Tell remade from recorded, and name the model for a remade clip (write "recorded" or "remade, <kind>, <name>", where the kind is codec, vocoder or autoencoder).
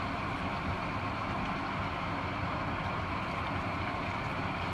remade, vocoder, BigVGAN v2